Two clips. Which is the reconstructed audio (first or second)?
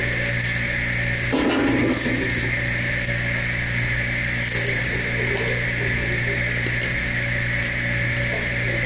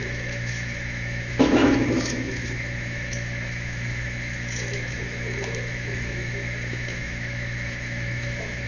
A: second